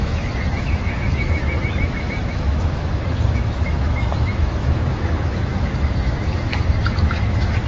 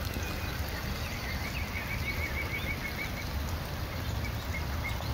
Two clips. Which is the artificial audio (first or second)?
first